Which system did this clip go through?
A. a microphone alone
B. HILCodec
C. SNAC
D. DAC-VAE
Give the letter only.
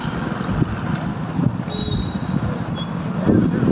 A